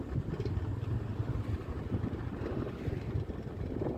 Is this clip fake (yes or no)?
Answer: no